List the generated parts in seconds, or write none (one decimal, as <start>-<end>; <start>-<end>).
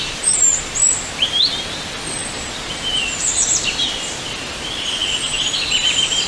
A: 0.0-0.8; 1.5-5.0; 5.6-6.3